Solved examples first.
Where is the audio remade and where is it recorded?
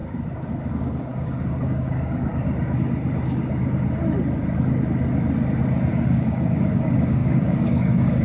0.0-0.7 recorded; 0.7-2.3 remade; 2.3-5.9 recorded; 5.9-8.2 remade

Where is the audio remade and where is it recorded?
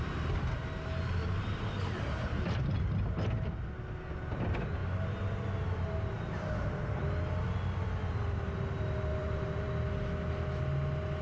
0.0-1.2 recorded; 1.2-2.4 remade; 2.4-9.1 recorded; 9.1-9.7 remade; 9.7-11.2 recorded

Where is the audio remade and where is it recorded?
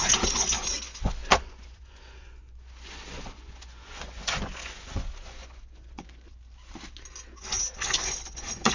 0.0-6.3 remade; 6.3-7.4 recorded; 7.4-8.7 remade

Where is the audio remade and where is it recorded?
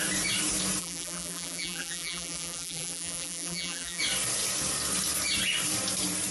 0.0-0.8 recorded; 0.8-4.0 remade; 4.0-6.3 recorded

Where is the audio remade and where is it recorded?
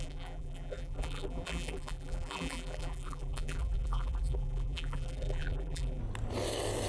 0.0-6.0 remade; 6.0-6.9 recorded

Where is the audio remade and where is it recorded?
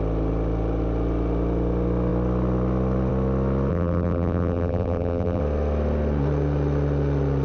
0.0-3.7 recorded; 3.7-5.4 remade; 5.4-7.4 recorded